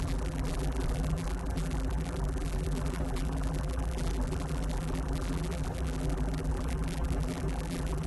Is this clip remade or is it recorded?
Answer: remade